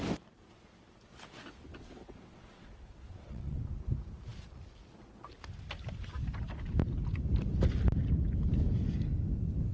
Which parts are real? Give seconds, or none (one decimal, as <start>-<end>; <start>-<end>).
0.0-1.7; 3.6-9.7